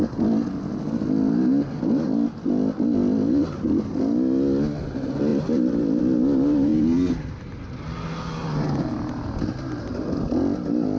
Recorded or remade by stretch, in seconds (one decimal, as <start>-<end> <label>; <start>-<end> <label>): 0.0-5.3 recorded; 5.3-6.0 remade; 6.0-8.4 recorded; 8.4-9.1 remade; 9.1-11.0 recorded